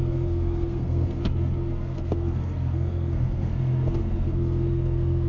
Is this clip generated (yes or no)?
yes